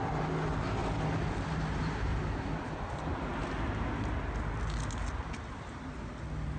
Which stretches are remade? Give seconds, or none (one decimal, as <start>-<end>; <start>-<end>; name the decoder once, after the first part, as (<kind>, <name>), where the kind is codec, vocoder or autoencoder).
0.8-1.3 (vocoder, BigVGAN v2); 2.1-2.7